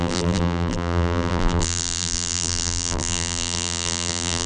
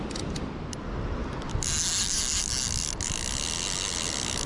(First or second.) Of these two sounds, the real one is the second